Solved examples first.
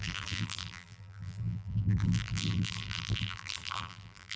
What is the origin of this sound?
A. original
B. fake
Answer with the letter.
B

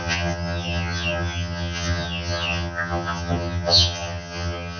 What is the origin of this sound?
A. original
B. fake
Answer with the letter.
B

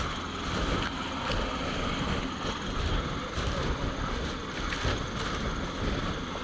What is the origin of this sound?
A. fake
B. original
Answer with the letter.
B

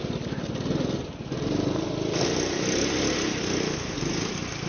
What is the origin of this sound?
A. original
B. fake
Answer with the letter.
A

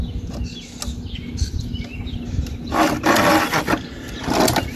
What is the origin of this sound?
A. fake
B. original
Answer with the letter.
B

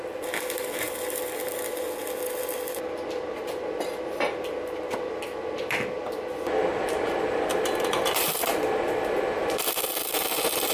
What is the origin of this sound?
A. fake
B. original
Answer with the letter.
B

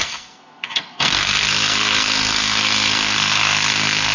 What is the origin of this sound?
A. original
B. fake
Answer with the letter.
B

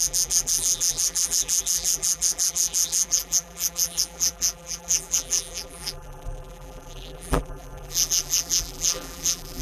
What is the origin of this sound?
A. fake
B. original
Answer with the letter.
A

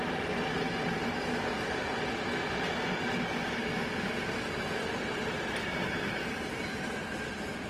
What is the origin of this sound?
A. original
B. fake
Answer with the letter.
A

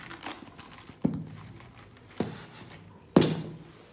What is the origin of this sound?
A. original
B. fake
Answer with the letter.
A